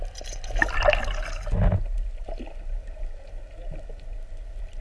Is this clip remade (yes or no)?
no